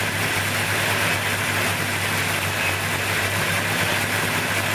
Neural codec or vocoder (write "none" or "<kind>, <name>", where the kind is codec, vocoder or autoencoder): none